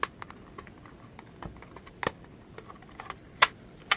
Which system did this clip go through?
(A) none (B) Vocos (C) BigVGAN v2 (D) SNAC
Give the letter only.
A